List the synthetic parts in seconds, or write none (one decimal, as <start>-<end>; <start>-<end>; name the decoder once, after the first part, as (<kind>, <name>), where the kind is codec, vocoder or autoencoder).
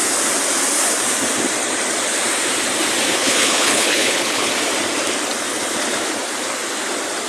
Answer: 3.2-4.5 (codec, HILCodec)